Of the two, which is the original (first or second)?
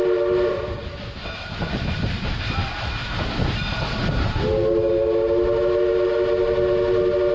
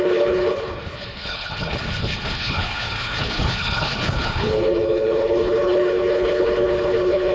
first